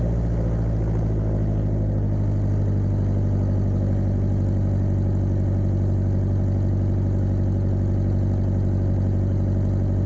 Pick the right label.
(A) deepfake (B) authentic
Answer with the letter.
B